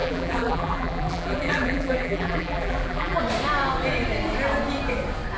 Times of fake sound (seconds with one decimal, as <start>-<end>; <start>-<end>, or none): 0.0-3.2